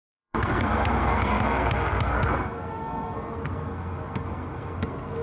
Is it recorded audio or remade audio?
remade